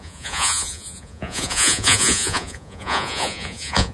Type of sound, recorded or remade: remade